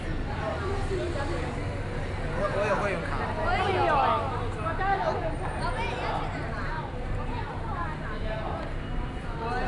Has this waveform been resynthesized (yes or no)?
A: no